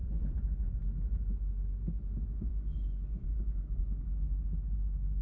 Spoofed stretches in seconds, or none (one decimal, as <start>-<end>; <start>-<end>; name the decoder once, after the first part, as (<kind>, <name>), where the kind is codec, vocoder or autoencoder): 0.0-0.8 (vocoder, Vocos); 2.5-4.0